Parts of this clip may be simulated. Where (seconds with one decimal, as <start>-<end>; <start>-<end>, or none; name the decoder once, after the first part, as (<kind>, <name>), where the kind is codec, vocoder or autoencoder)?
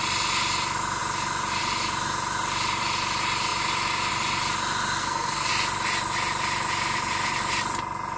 5.0-5.5 (codec, SNAC)